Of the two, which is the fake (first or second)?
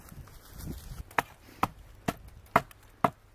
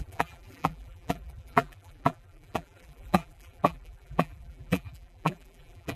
second